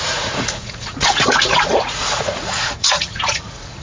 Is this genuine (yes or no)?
no